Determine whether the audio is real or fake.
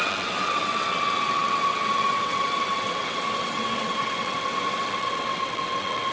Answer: fake